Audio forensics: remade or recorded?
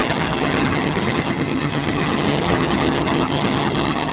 remade